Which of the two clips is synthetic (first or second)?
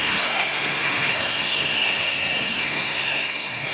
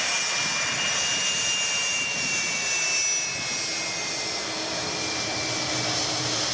first